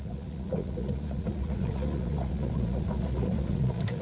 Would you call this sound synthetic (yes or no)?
yes